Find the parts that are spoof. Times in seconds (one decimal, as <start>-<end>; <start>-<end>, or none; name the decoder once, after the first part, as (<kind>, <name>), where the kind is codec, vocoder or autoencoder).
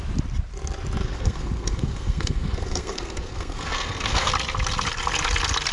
1.0-4.3 (codec, SNAC)